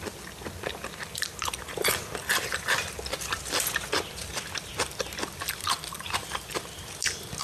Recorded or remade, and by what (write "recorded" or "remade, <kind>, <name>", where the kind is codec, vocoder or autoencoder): remade, vocoder, BigVGAN v2